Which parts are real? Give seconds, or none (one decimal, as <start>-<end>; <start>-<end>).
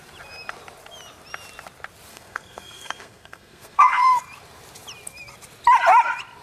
0.0-2.1; 4.2-6.4